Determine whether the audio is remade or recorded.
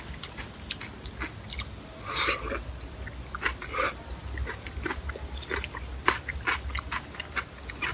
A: recorded